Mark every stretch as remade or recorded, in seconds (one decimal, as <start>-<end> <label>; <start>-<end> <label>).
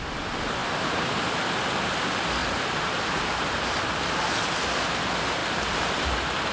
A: 0.0-2.4 recorded; 2.4-4.3 remade; 4.3-5.4 recorded; 5.4-6.1 remade; 6.1-6.5 recorded